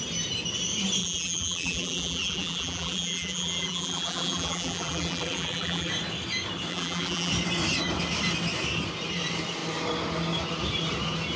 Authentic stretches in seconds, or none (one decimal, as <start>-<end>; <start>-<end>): 0.0-1.0; 5.9-6.7; 7.3-11.4